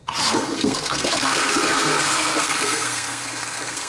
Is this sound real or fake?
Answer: fake